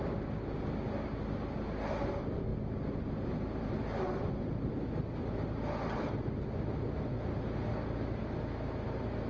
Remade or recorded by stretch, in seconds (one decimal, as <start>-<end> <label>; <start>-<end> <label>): 0.0-9.3 recorded